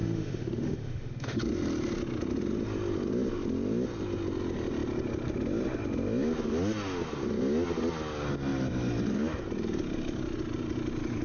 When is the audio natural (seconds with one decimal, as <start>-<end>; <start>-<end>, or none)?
1.4-11.2